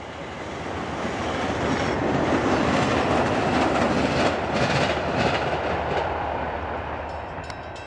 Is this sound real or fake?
real